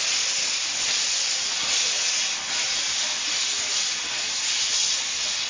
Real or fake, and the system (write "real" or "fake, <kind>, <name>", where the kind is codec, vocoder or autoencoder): real